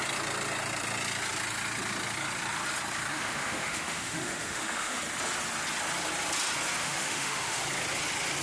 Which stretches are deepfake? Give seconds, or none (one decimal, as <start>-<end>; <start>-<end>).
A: 3.1-5.0; 6.8-7.6